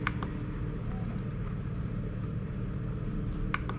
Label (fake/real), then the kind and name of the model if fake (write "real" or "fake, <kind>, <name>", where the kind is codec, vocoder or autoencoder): fake, vocoder, BigVGAN v2